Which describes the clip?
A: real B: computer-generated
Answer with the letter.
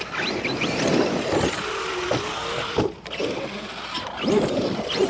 A